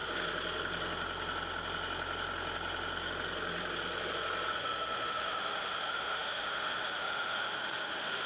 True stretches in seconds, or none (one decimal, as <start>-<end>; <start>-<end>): 0.0-4.5